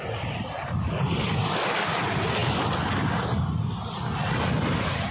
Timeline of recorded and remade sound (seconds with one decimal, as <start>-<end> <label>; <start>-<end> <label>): 0.0-5.1 recorded